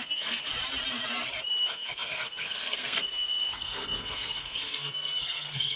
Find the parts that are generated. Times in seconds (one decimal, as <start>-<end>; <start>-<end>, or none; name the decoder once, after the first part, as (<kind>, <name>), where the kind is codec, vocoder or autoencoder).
0.0-0.5 (codec, SNAC); 1.6-5.8